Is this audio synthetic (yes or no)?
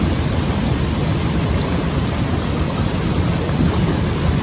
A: no